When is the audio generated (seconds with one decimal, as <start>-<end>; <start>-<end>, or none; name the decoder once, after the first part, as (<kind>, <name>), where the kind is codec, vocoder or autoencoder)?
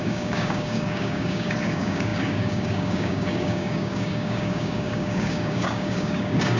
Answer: 0.0-6.6 (codec, DAC)